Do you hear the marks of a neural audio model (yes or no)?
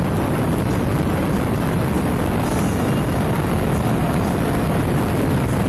no